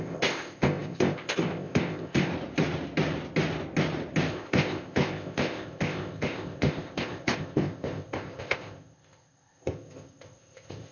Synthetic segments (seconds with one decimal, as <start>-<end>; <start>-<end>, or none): 0.0-2.3; 4.3-10.9